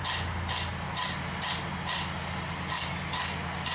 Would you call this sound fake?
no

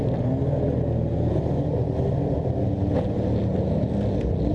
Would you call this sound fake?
no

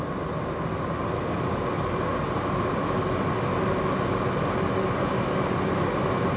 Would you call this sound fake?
no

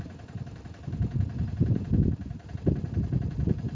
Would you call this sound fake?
no